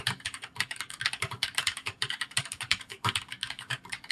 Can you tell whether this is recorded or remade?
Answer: remade